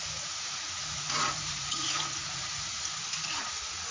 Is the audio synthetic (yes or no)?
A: yes